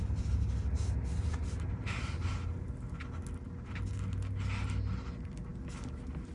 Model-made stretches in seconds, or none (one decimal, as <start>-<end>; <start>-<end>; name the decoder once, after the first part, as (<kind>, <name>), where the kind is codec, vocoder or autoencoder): none